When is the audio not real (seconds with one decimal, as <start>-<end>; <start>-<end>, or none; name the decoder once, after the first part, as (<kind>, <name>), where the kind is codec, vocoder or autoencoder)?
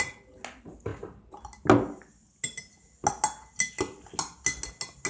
none